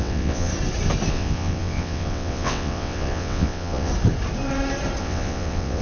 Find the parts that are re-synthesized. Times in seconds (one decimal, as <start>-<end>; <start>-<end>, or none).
0.0-0.5; 1.1-3.9; 5.0-5.8